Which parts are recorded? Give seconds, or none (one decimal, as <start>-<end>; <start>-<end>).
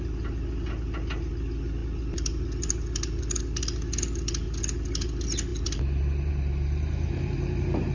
0.0-7.9